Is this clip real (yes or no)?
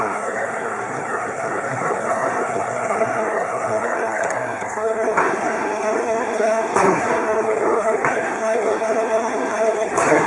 no